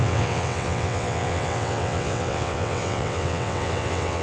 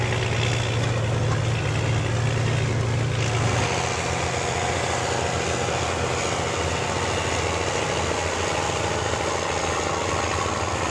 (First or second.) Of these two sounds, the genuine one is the second